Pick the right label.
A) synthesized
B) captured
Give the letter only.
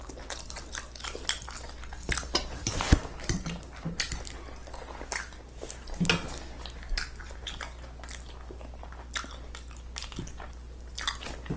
B